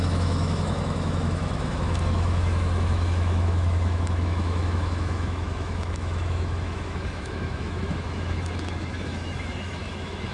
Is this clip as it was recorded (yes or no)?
no